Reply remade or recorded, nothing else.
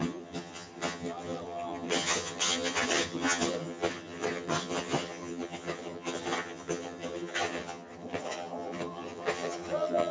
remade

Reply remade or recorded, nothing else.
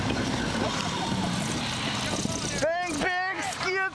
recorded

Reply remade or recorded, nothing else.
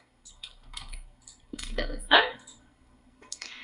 remade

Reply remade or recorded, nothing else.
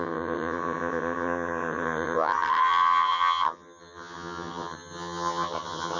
remade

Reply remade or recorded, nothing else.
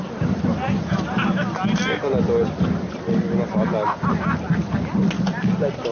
recorded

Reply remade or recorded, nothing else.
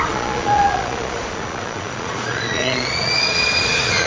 remade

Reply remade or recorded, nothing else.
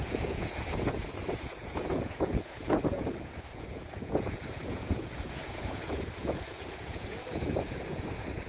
remade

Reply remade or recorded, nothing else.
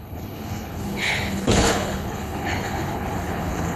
remade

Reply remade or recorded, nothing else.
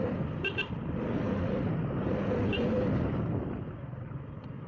remade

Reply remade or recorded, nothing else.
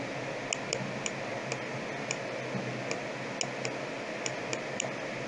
recorded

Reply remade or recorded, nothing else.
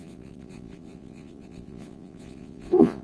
remade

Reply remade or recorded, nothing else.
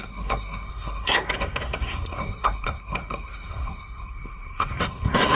remade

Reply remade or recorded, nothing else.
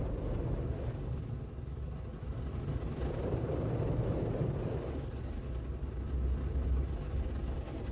recorded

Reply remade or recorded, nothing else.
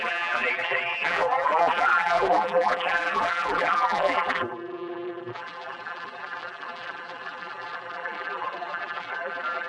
remade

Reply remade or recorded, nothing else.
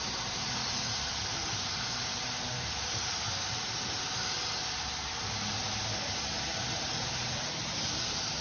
recorded